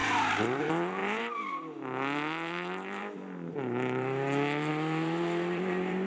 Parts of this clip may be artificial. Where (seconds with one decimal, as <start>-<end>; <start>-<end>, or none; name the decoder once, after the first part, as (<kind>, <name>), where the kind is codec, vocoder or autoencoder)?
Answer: 0.0-6.1 (vocoder, BigVGAN v2)